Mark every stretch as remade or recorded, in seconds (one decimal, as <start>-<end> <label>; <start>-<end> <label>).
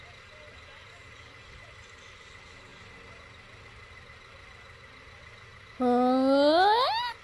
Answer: 0.0-7.2 recorded